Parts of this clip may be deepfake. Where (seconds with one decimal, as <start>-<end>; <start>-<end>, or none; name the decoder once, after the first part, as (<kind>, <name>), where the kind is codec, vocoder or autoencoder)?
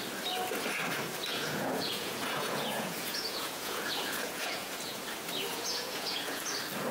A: 1.3-5.0 (vocoder, Vocos); 5.5-6.4